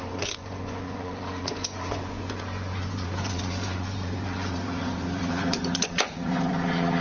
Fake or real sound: fake